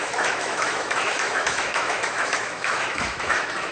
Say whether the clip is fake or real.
fake